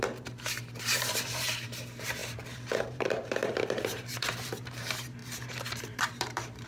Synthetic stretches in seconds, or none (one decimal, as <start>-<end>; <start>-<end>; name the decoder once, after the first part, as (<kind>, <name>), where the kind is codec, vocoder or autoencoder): 0.0-6.7 (vocoder, BigVGAN v2)